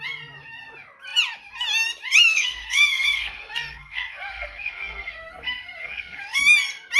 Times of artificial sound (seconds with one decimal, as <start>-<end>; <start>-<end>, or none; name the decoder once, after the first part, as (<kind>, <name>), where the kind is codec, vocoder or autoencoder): 2.3-6.4 (codec, SNAC)